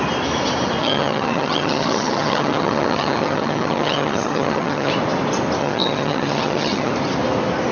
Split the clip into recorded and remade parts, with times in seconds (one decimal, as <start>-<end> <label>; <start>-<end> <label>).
0.0-0.8 recorded; 0.8-4.9 remade; 4.9-5.6 recorded; 5.6-6.9 remade; 6.9-7.7 recorded